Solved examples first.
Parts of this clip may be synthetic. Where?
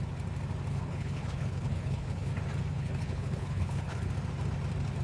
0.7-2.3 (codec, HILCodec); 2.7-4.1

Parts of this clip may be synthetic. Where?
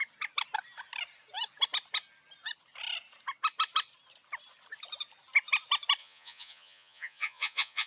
6.0-7.9 (vocoder, Vocos)